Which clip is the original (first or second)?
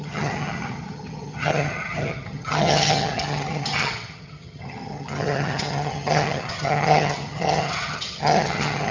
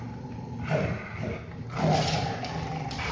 second